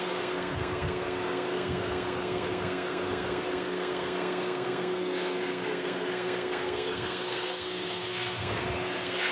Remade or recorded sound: remade